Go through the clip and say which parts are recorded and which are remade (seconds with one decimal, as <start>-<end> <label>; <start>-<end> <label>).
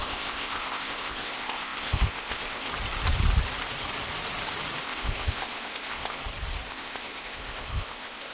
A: 0.0-2.7 remade; 2.7-4.8 recorded; 4.8-6.2 remade; 6.2-6.7 recorded; 6.7-8.3 remade